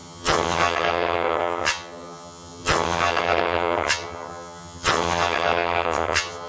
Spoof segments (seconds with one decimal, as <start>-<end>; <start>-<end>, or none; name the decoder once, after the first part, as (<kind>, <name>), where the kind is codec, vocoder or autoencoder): 0.0-6.5 (vocoder, HiFi-GAN)